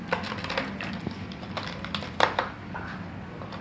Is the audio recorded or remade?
recorded